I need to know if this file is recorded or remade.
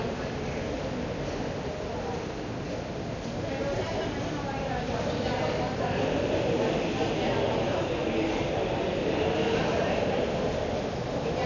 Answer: recorded